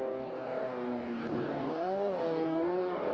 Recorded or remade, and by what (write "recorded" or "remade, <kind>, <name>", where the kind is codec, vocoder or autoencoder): remade, codec, DAC